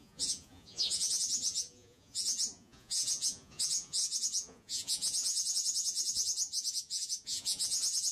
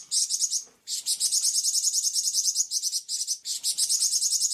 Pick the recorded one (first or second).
second